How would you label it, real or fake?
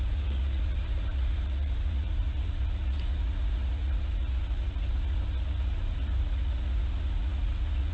fake